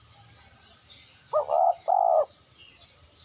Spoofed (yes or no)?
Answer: no